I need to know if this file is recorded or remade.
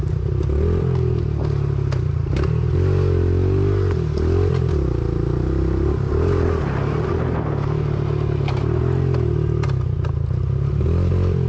recorded